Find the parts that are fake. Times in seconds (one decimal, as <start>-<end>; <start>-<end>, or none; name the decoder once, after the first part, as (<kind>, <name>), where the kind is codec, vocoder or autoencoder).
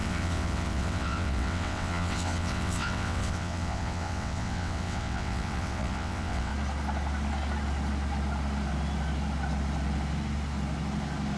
0.0-6.5 (vocoder, WaveNeXt)